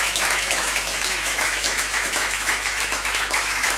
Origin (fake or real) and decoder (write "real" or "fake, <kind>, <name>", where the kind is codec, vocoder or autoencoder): fake, autoencoder, DAC-VAE